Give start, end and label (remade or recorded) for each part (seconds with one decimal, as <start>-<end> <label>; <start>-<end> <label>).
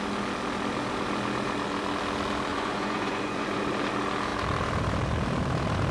0.0-2.5 recorded; 2.5-3.6 remade; 3.6-5.9 recorded